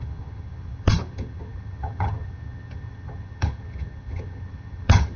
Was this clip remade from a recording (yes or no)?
yes